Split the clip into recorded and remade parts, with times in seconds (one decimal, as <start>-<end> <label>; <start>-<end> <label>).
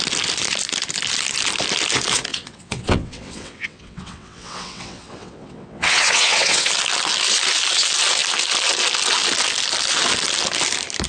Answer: 0.0-2.3 recorded; 2.3-6.7 remade; 6.7-11.1 recorded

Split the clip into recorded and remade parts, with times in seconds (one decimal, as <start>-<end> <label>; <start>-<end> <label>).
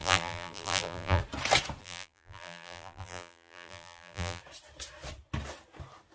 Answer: 0.0-1.2 remade; 1.2-1.8 recorded; 1.8-4.4 remade; 4.4-6.1 recorded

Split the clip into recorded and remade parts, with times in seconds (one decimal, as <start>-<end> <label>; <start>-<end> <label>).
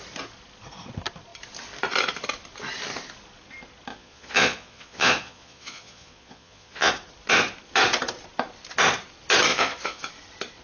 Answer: 0.0-3.9 recorded; 3.9-6.9 remade; 6.9-9.5 recorded; 9.5-10.1 remade; 10.1-10.6 recorded